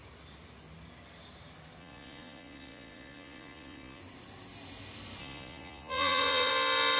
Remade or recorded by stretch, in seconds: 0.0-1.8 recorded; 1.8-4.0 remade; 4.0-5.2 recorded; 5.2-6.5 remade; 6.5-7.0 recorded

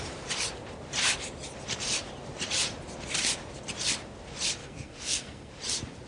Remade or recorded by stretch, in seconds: 0.0-4.6 recorded; 4.6-5.5 remade; 5.5-6.1 recorded